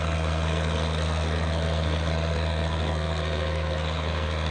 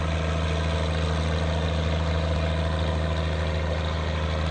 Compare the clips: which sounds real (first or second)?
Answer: second